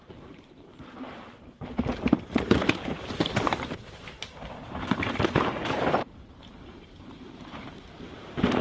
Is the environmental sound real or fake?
fake